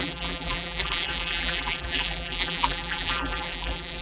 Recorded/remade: remade